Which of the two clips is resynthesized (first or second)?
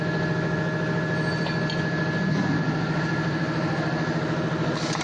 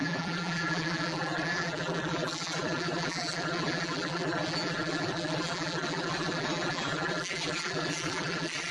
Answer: second